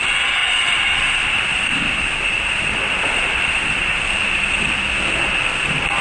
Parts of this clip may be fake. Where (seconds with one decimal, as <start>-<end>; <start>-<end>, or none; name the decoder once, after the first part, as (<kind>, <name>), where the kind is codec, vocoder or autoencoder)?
0.4-4.0 (vocoder, BigVGAN v2)